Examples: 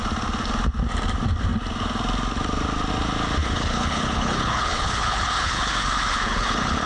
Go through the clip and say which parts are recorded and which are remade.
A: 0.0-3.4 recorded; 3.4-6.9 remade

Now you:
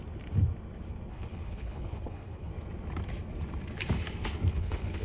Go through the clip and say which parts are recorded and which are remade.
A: 0.0-1.1 recorded; 1.1-2.5 remade; 2.5-4.5 recorded; 4.5-5.0 remade

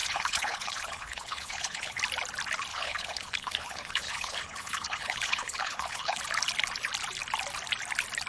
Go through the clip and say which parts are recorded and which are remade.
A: 0.0-2.0 remade; 2.0-2.7 recorded; 2.7-6.2 remade; 6.2-8.3 recorded